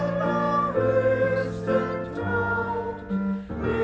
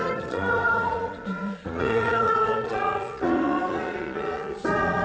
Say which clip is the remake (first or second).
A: second